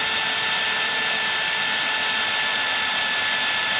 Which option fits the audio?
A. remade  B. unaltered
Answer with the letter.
B